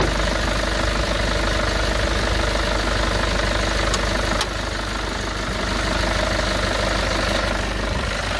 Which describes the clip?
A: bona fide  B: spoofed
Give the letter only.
A